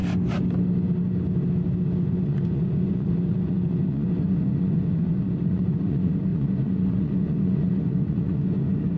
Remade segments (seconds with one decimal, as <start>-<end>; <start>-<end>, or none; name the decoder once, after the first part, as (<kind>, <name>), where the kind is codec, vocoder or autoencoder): 2.0-9.0 (vocoder, Vocos)

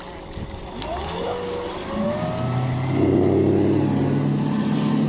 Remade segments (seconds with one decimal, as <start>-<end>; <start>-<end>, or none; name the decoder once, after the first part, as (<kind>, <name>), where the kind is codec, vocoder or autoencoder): none